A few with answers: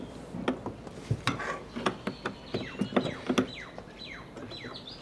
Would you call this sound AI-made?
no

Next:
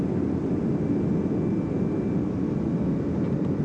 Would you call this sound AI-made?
no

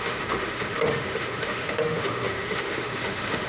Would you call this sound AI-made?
yes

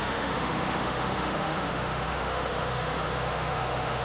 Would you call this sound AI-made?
yes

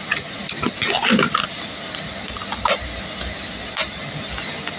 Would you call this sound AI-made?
no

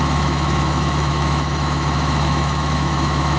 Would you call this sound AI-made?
yes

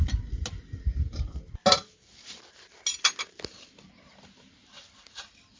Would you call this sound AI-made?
no